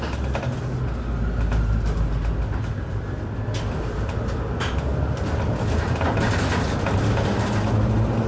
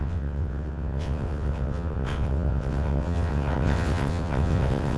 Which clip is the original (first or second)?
first